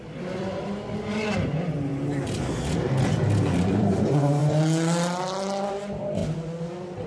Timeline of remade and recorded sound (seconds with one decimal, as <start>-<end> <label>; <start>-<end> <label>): 0.0-1.9 remade; 1.9-3.7 recorded; 3.7-4.4 remade; 4.4-5.7 recorded; 5.7-6.2 remade; 6.2-7.1 recorded